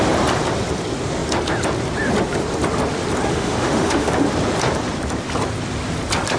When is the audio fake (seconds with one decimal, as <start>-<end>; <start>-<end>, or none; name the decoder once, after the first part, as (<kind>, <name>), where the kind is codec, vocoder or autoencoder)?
3.3-4.1 (autoencoder, DAC-VAE)